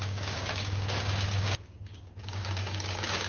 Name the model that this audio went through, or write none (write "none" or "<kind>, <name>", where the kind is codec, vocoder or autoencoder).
codec, DAC